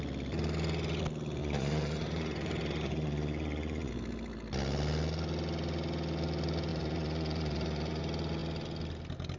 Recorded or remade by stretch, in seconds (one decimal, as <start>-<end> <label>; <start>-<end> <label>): 0.0-1.4 recorded; 1.4-3.9 remade; 3.9-6.7 recorded; 6.7-8.0 remade; 8.0-9.4 recorded